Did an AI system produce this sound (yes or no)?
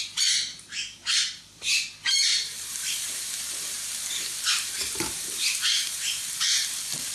yes